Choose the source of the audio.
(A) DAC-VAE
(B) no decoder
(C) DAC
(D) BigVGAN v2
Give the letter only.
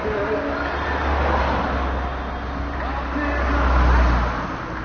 B